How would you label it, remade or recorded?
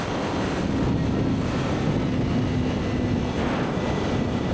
recorded